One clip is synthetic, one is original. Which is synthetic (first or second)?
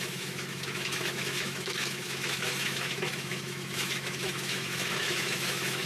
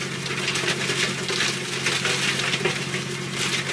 first